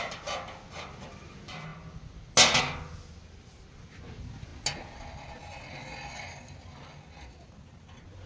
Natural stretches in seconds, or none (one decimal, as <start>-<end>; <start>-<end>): 0.0-8.3